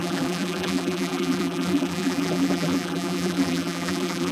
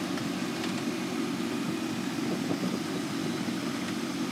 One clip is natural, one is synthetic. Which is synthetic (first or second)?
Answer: first